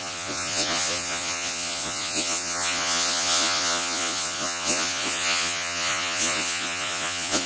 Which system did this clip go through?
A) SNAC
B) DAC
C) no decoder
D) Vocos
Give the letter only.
D